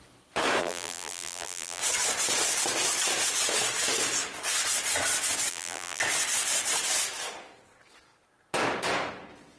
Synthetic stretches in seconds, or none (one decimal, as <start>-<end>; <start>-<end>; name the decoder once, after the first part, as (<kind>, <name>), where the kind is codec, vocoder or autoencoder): 0.6-1.8 (vocoder, BigVGAN v2); 5.5-6.0